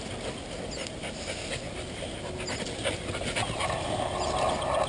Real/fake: real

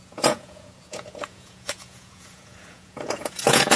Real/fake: fake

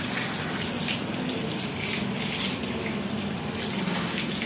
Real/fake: real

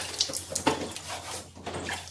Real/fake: real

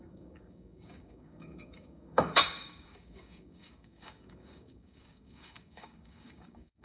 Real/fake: fake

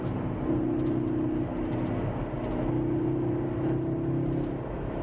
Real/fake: real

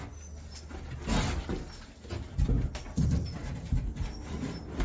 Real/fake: real